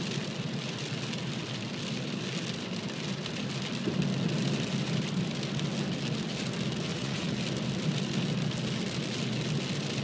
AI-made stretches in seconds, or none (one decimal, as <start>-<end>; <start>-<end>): 6.9-7.4